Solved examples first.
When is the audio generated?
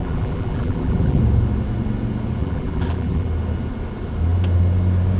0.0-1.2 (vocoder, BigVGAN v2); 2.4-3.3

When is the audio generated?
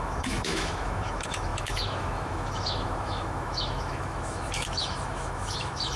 0.0-6.0 (autoencoder, DAC-VAE)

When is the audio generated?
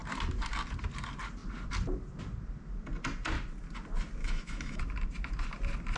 4.2-4.8 (autoencoder, DAC-VAE)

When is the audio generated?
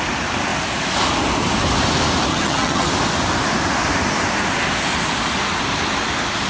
2.3-2.9 (vocoder, HiFi-GAN)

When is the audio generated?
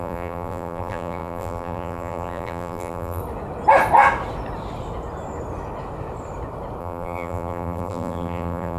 0.0-3.2 (vocoder, BigVGAN v2); 6.8-8.8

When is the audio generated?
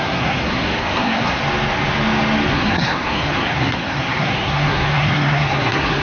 0.0-1.4 (codec, SNAC); 2.5-6.0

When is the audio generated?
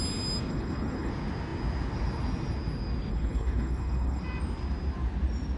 0.5-1.1 (codec, HILCodec); 3.1-4.2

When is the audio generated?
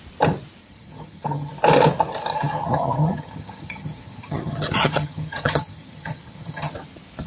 0.6-1.5 (vocoder, HiFi-GAN); 2.3-6.7